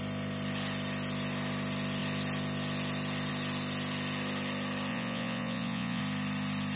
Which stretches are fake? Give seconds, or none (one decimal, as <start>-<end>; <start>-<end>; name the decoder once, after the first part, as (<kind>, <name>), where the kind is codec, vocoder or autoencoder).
4.9-6.0 (vocoder, Vocos)